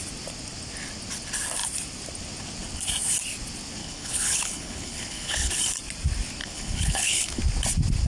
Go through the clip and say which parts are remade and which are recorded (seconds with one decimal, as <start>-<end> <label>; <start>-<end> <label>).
0.0-3.8 recorded; 3.8-5.5 remade; 5.5-6.4 recorded; 6.4-7.4 remade; 7.4-8.1 recorded